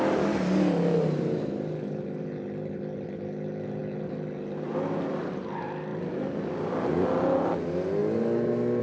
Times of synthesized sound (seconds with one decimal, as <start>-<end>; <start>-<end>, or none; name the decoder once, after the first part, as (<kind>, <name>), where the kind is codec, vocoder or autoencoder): none